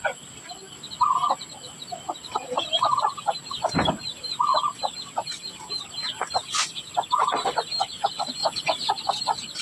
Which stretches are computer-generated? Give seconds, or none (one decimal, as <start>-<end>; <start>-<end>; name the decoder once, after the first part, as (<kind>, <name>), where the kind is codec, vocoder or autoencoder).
none